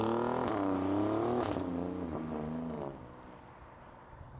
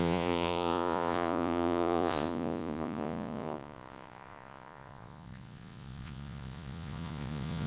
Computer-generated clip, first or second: second